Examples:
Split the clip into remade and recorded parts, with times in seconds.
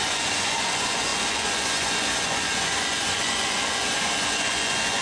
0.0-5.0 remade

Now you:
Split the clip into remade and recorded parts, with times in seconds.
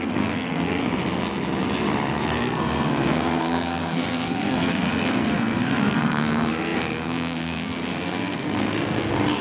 0.0-0.8 remade; 0.8-2.1 recorded; 2.1-9.4 remade